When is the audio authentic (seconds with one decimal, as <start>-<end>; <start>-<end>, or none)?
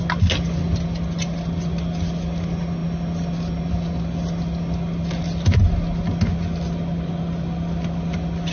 0.0-8.5